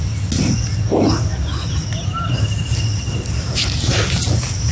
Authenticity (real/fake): real